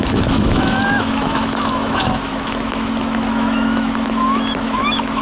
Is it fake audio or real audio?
fake